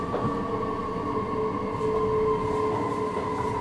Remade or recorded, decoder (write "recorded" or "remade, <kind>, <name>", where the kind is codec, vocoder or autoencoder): recorded